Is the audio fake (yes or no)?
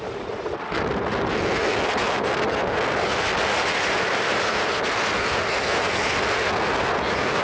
no